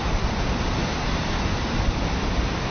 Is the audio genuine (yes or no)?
yes